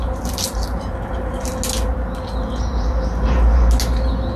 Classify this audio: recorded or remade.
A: recorded